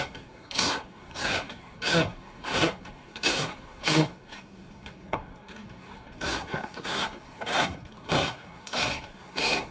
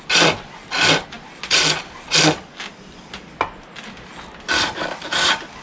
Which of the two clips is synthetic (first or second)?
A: first